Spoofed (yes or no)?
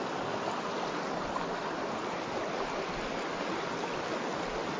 no